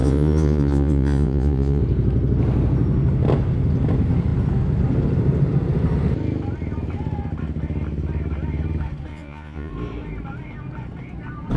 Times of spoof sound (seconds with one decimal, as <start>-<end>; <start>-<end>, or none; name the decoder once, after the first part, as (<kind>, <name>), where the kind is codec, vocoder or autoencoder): 0.0-1.8 (vocoder, Vocos); 9.1-9.7